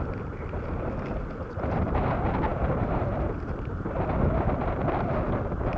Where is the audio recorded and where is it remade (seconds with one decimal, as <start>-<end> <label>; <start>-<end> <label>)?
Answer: 0.0-5.8 recorded